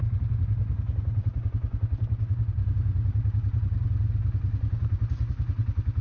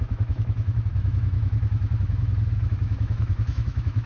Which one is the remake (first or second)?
second